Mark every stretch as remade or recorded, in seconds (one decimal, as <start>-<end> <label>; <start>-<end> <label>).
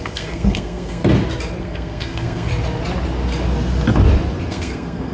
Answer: 0.0-1.0 remade; 1.0-1.6 recorded; 1.6-2.5 remade; 2.5-4.5 recorded; 4.5-5.1 remade